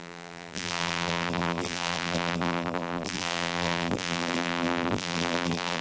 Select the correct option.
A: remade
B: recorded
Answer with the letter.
A